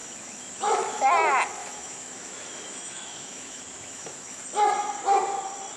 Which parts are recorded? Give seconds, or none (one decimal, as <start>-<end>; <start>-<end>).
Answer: 1.1-1.6; 4.4-5.8

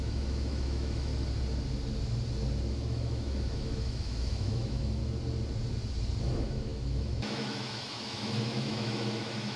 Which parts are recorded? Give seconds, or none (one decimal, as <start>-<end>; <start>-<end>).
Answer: 1.1-2.7; 5.0-6.2

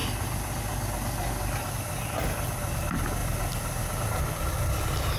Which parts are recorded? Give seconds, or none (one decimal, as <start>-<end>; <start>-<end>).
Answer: 0.0-5.2

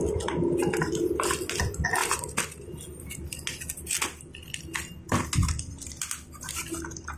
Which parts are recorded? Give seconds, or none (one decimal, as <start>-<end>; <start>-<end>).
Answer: 0.0-7.2

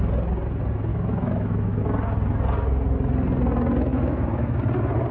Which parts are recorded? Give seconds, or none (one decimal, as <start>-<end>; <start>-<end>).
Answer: 0.0-0.9; 1.8-3.9; 4.6-5.1

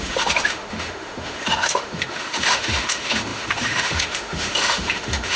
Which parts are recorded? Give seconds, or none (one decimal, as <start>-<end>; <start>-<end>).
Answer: none

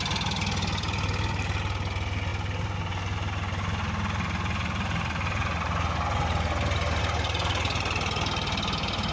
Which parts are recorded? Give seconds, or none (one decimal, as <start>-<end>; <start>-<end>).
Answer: 0.0-9.1